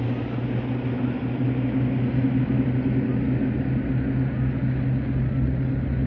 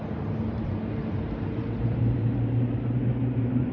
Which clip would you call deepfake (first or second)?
second